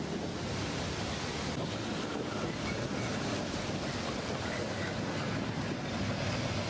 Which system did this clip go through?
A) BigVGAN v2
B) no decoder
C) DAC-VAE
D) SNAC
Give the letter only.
B